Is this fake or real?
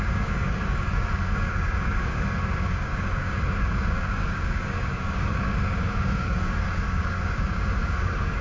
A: fake